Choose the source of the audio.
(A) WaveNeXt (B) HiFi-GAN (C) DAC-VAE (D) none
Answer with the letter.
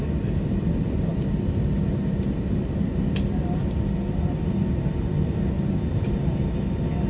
D